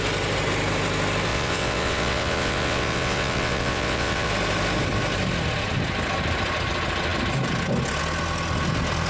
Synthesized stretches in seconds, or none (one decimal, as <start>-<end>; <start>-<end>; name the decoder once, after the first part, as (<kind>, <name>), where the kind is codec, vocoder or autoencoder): 1.3-4.3 (vocoder, WaveNeXt)